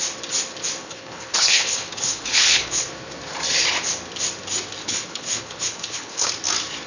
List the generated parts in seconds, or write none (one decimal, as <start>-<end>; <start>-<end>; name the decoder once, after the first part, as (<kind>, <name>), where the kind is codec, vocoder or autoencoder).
0.8-2.9 (codec, HILCodec); 4.8-6.3